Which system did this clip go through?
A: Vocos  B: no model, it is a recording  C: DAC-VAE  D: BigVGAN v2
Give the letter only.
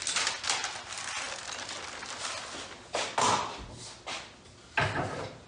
B